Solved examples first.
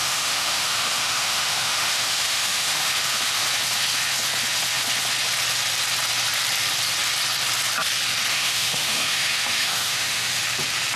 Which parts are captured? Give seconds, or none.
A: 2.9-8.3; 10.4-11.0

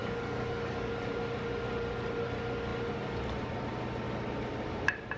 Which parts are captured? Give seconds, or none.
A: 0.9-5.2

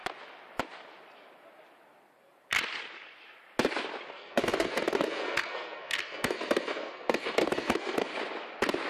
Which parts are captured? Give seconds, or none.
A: 0.0-4.1; 8.1-8.9

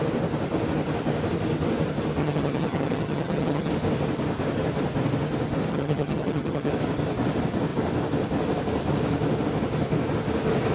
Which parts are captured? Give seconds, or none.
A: 0.0-2.2; 3.7-5.7; 6.7-10.7